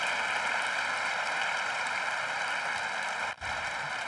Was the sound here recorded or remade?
recorded